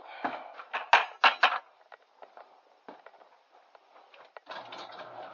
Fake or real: real